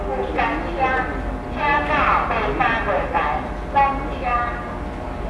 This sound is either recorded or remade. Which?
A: recorded